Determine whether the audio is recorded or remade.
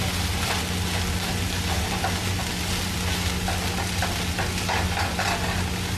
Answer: recorded